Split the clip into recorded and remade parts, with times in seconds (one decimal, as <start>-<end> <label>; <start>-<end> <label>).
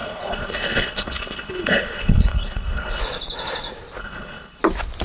0.0-3.0 remade; 3.0-4.0 recorded; 4.0-4.6 remade; 4.6-5.0 recorded